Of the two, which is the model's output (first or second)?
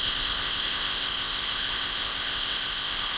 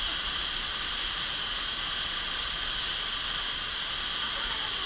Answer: first